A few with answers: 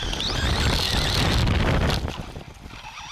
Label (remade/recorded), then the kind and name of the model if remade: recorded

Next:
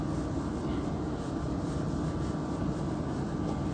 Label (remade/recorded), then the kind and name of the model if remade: recorded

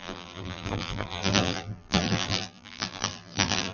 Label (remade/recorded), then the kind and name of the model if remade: remade, vocoder, BigVGAN v2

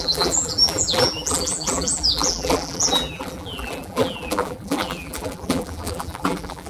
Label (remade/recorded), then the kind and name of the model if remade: remade, vocoder, BigVGAN v2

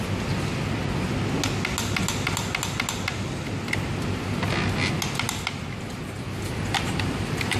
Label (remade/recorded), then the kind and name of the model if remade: recorded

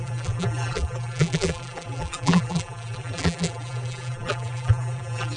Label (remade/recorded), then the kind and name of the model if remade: remade, vocoder, BigVGAN v2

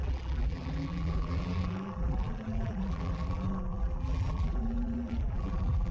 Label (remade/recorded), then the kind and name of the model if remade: remade, vocoder, BigVGAN v2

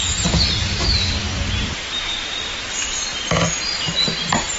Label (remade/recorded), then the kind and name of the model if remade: recorded